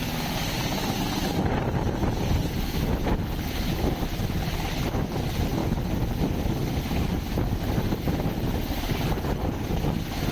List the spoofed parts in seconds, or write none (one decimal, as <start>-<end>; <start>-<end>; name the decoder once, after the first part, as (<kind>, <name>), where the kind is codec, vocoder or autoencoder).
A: none